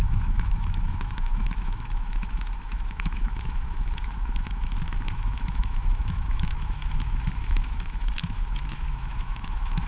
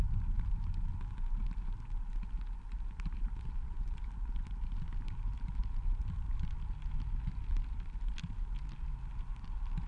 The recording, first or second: second